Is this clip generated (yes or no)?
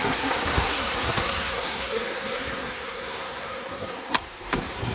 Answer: yes